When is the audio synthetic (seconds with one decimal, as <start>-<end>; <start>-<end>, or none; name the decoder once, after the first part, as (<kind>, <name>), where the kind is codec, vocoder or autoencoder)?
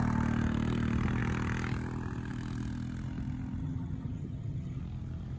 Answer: 3.6-4.8 (vocoder, HiFi-GAN)